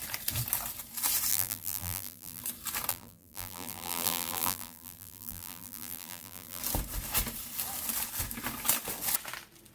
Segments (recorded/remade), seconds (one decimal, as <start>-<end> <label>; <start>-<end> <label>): 0.0-1.3 recorded; 1.3-2.4 remade; 2.4-2.9 recorded; 2.9-6.6 remade; 6.6-9.7 recorded